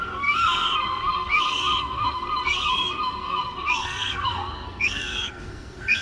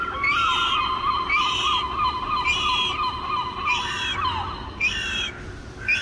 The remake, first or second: first